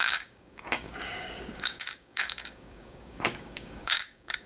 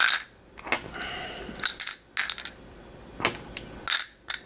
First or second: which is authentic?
second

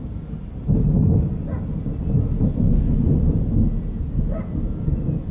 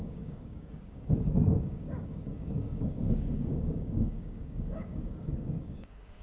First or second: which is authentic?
first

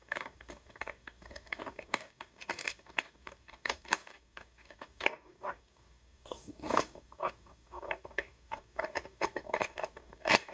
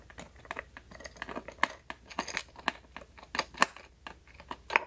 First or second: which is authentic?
second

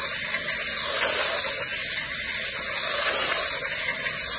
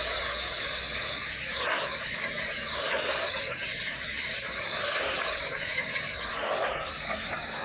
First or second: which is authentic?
first